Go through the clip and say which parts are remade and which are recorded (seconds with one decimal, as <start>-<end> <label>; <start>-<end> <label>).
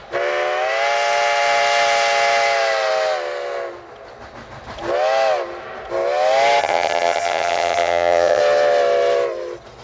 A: 0.0-6.6 recorded; 6.6-8.4 remade; 8.4-9.8 recorded